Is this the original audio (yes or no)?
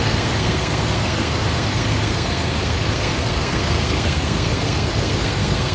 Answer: no